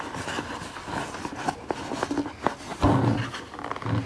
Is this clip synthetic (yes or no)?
no